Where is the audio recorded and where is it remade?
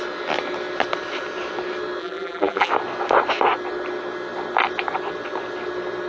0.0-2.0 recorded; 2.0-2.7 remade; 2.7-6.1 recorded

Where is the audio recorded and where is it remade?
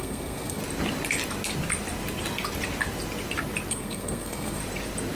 0.0-0.6 remade; 0.6-3.7 recorded; 3.7-4.6 remade; 4.6-5.2 recorded